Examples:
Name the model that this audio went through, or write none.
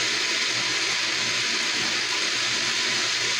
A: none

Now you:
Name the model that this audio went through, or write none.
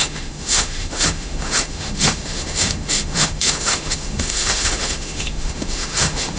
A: autoencoder, DAC-VAE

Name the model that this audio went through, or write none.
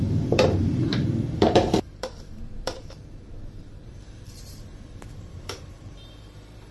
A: vocoder, BigVGAN v2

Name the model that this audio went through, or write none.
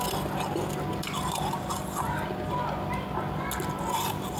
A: none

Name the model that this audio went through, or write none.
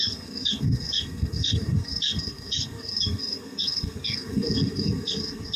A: codec, SNAC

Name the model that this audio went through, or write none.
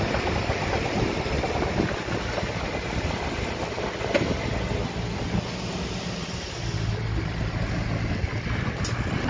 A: none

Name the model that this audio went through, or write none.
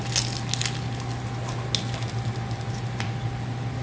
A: none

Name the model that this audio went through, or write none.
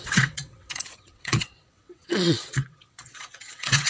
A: vocoder, WaveNeXt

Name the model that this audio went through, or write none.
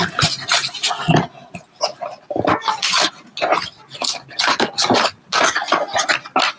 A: none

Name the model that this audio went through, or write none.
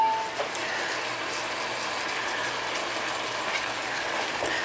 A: none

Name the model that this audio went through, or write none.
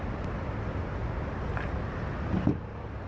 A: none